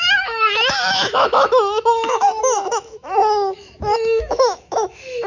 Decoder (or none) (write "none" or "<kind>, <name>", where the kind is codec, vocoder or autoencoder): autoencoder, DAC-VAE